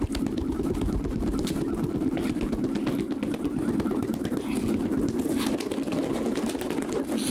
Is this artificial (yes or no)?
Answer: no